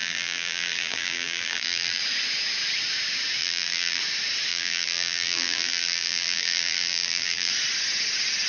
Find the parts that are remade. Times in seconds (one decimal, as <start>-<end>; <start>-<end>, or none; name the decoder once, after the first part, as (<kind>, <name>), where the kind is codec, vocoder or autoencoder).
0.0-2.0 (vocoder, BigVGAN v2); 3.4-4.0; 4.5-7.5